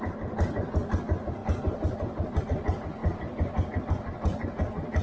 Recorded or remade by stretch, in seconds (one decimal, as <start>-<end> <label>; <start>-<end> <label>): 0.0-5.0 recorded